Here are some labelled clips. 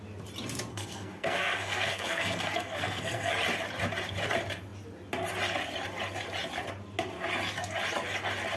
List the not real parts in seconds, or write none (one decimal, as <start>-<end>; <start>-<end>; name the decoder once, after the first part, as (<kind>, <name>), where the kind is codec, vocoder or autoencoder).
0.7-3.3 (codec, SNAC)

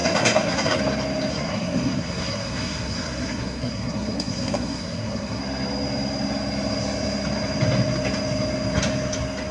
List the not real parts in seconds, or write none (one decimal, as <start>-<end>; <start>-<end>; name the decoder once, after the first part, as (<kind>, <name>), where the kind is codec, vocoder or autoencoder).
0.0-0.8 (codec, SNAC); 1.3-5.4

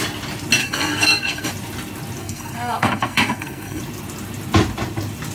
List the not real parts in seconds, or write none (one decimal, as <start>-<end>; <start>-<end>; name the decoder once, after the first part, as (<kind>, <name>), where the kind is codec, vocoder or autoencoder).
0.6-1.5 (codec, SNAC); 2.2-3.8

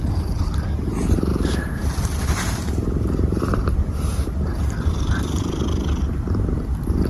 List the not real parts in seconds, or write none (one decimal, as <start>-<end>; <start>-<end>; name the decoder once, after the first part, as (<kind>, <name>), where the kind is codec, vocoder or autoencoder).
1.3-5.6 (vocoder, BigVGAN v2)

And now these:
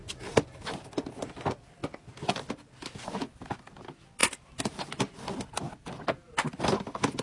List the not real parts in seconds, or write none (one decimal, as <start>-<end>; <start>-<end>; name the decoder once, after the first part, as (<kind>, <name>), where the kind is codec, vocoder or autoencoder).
none

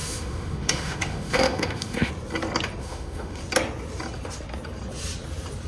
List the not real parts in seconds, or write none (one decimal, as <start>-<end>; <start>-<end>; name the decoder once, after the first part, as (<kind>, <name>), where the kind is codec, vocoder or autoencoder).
0.0-2.1 (autoencoder, DAC-VAE); 2.8-3.4

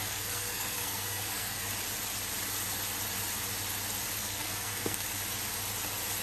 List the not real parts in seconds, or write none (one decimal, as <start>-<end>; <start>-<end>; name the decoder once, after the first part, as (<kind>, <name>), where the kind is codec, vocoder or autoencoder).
0.0-1.7 (codec, SNAC); 4.2-5.1